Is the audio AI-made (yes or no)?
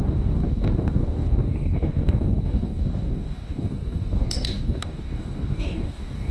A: yes